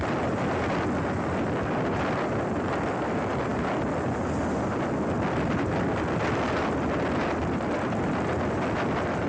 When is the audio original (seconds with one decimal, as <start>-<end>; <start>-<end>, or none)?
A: 0.0-9.3